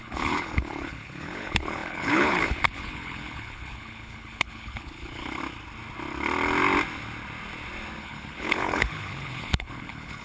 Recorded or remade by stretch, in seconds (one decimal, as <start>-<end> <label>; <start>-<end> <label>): 0.0-5.4 remade; 5.4-8.0 recorded; 8.0-10.2 remade